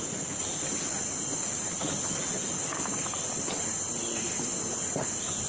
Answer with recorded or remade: recorded